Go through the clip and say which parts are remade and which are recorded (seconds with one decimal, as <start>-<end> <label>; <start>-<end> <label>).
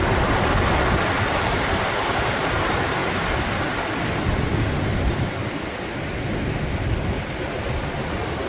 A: 0.0-3.0 recorded; 3.0-5.2 remade; 5.2-8.5 recorded